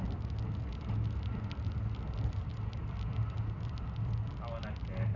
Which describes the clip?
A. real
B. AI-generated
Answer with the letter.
A